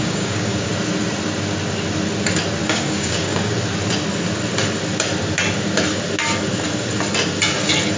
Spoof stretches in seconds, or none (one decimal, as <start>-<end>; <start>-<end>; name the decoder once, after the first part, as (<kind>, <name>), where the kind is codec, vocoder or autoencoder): 0.0-0.7 (codec, DAC); 2.6-3.5